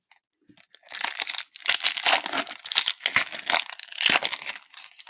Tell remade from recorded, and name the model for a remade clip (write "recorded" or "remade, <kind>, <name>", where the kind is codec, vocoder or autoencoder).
recorded